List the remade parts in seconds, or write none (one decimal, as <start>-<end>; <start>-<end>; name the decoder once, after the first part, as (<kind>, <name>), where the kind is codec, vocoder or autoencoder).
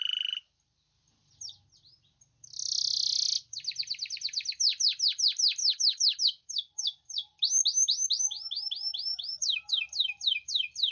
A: 5.6-6.2 (autoencoder, DAC-VAE); 9.1-9.7